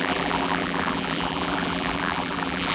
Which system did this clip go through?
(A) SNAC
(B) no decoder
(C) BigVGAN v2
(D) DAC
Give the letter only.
C